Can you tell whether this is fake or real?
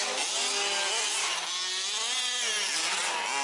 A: real